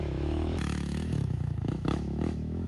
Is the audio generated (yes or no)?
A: yes